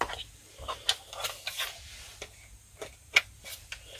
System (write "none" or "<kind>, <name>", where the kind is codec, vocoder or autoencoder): none